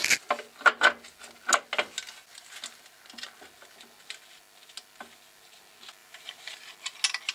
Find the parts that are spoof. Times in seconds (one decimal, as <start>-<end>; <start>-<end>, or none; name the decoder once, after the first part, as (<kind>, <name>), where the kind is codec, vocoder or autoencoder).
6.0-6.7 (vocoder, BigVGAN v2)